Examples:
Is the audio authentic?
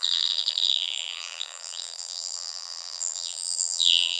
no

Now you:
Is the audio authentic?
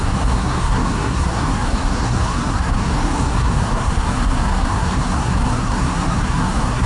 no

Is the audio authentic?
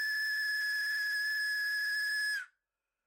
yes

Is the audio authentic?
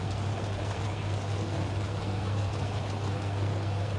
no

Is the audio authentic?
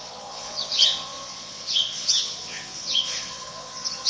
no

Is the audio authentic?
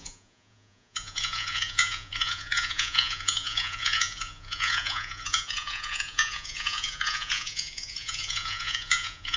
no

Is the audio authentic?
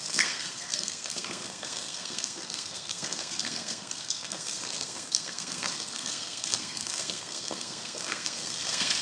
no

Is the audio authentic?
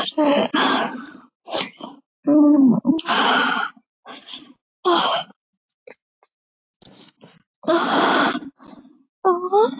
yes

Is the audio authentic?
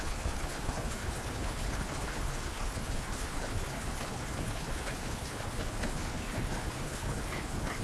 no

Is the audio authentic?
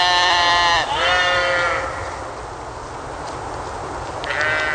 yes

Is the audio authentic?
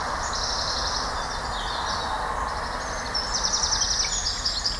yes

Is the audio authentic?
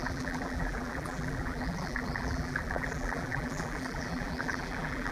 no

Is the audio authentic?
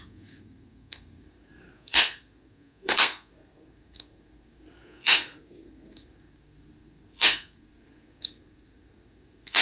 no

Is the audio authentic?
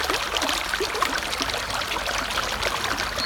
yes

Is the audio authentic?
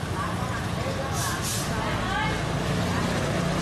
yes